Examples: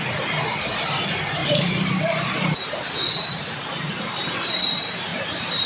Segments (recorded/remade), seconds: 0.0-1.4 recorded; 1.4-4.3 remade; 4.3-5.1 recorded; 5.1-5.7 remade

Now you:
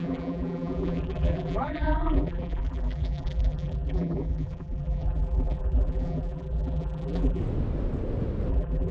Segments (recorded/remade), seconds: 0.0-7.4 remade; 7.4-8.5 recorded; 8.5-8.9 remade

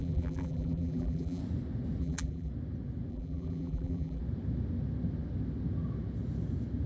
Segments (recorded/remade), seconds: 0.0-1.4 remade; 1.4-2.0 recorded; 2.0-2.5 remade; 2.5-3.1 recorded; 3.1-4.2 remade; 4.2-6.9 recorded

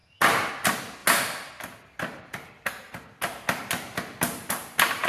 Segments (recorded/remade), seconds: 0.0-5.1 recorded

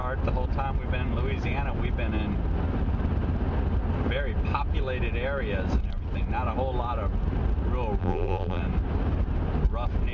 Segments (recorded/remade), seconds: 0.0-8.0 recorded; 8.0-8.6 remade; 8.6-10.1 recorded

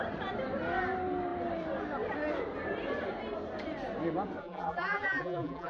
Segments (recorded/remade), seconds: 0.0-4.4 recorded; 4.4-5.7 remade

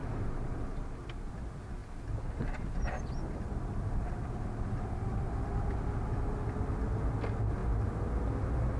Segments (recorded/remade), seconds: 0.0-1.3 remade; 1.3-8.8 recorded

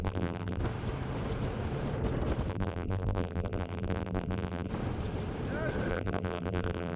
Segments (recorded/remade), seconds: 0.0-0.6 remade; 0.6-2.5 recorded; 2.5-4.7 remade; 4.7-5.9 recorded; 5.9-7.0 remade